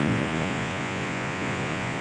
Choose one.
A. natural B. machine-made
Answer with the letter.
B